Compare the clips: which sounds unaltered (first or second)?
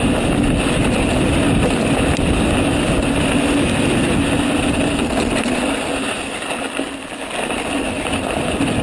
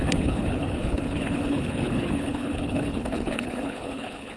first